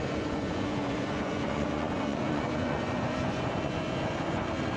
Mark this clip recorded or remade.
remade